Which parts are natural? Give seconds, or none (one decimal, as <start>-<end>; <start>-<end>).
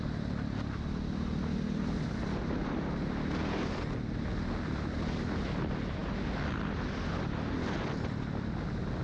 0.0-9.0